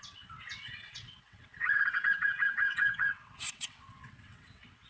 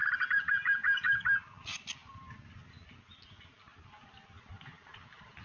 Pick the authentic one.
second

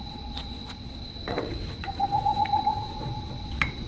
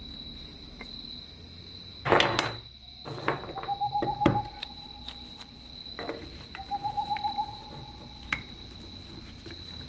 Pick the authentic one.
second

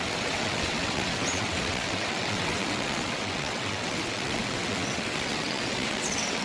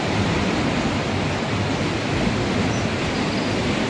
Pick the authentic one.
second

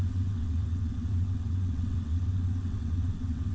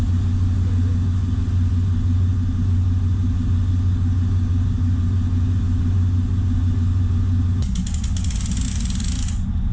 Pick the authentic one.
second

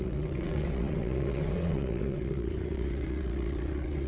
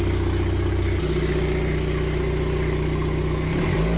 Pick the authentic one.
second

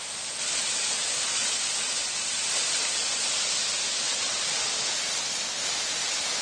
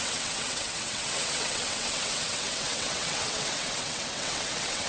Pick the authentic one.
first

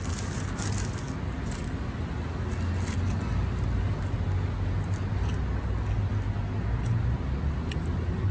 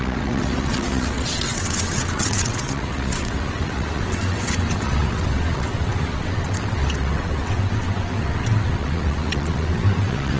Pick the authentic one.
first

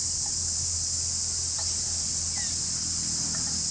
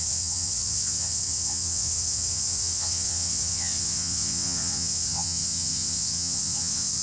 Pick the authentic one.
first